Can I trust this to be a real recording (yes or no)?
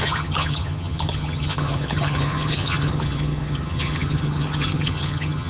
no